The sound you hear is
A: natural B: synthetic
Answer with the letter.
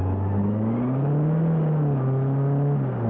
A